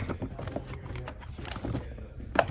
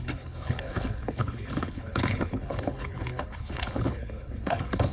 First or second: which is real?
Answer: first